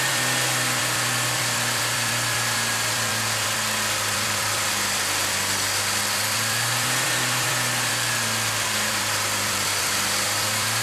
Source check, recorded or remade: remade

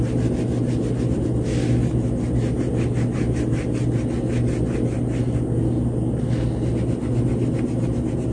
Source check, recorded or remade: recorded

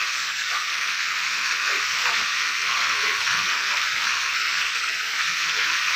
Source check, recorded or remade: remade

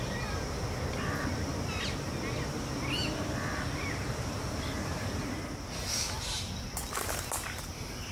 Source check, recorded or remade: recorded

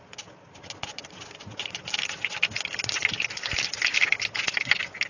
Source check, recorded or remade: recorded